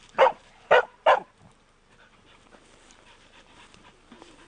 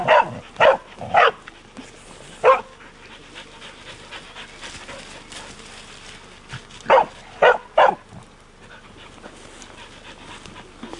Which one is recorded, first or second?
second